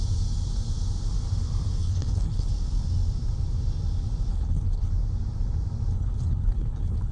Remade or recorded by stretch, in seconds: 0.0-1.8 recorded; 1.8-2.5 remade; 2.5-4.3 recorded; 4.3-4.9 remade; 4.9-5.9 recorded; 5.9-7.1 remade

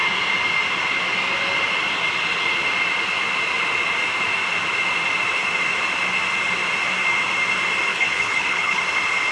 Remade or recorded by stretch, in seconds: 0.0-7.9 recorded; 7.9-8.8 remade; 8.8-9.3 recorded

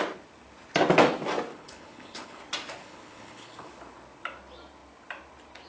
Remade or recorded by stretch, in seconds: 0.0-1.5 recorded; 1.5-2.4 remade; 2.4-2.8 recorded; 2.8-3.7 remade; 3.7-5.7 recorded

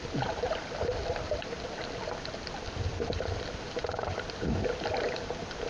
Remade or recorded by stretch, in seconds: 0.0-5.7 recorded

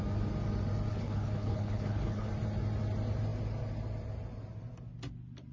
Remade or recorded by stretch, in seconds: 0.0-0.9 recorded; 0.9-2.3 remade; 2.3-5.5 recorded